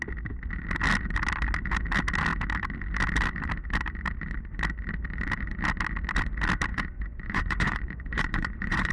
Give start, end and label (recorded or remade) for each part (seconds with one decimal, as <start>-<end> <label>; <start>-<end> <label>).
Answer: 0.0-6.7 recorded; 6.7-8.9 remade